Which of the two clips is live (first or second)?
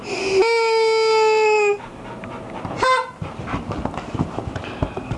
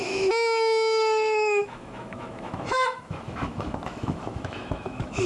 first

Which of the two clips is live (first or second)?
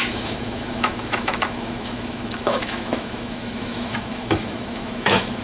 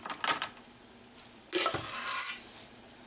second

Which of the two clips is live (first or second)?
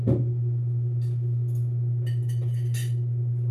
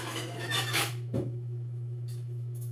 first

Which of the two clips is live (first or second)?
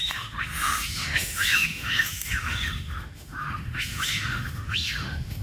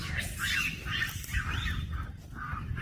second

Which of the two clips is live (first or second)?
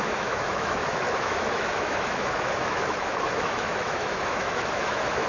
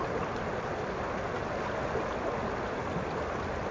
second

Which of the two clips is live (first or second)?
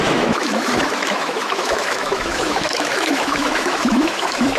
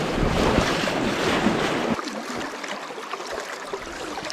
second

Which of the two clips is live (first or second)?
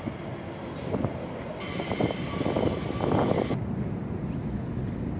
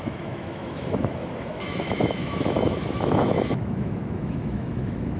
first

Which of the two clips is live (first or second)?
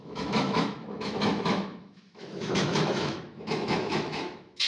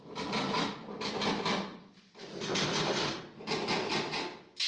second